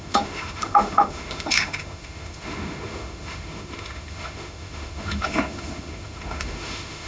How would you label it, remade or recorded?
remade